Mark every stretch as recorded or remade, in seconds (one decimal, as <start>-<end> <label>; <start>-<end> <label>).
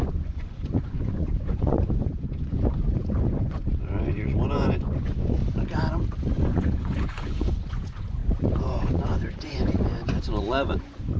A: 0.0-5.4 remade; 5.4-6.3 recorded; 6.3-11.2 remade